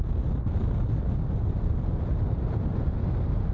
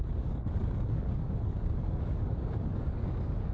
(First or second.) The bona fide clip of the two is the first